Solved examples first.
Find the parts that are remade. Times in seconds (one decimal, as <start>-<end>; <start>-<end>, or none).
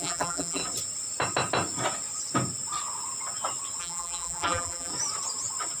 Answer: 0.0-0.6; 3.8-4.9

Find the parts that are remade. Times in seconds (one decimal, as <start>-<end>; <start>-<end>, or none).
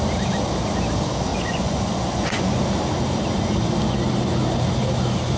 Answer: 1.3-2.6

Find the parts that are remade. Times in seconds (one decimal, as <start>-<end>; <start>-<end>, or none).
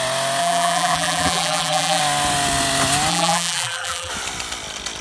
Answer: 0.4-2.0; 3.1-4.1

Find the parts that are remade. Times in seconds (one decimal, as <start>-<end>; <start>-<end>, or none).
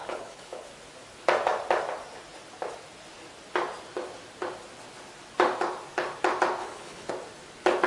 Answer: 0.0-0.7; 6.6-7.1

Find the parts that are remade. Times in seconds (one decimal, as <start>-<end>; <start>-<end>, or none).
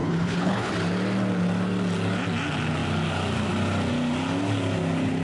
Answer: 0.0-0.7